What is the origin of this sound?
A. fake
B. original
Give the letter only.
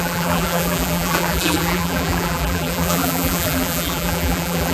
A